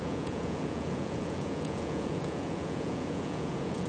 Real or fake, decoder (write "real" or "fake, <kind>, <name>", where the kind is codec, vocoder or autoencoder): fake, vocoder, Vocos